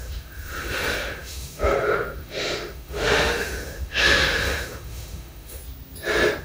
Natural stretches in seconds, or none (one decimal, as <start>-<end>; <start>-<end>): 5.6-6.4